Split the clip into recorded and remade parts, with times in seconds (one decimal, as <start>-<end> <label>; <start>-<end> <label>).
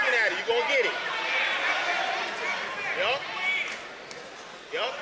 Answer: 0.0-5.0 recorded